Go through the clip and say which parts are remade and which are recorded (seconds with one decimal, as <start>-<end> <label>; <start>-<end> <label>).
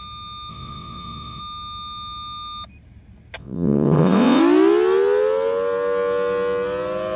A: 0.0-0.5 recorded; 0.5-1.4 remade; 1.4-3.4 recorded; 3.4-4.4 remade; 4.4-7.2 recorded